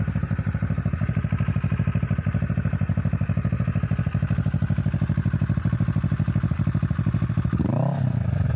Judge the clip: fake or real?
real